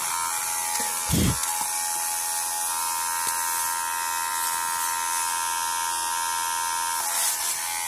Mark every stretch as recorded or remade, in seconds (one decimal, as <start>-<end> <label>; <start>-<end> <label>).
0.0-7.9 recorded